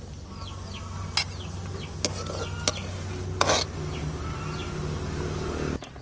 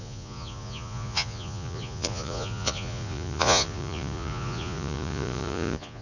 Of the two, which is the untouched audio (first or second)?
first